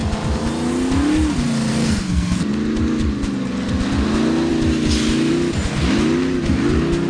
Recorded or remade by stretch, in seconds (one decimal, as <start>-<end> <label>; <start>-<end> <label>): 0.0-1.7 recorded; 1.7-2.5 remade; 2.5-7.1 recorded